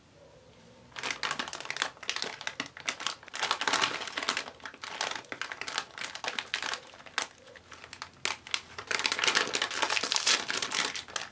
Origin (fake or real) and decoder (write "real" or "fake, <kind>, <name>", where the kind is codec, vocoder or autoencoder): real